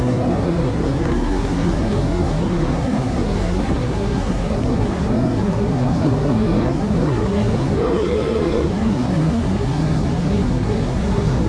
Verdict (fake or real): fake